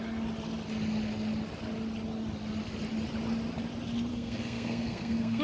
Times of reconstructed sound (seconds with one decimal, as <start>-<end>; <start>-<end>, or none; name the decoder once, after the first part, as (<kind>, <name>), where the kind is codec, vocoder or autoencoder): 4.1-5.4 (codec, SNAC)